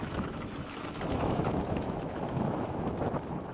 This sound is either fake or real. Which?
fake